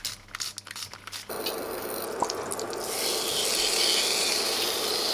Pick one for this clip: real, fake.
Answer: real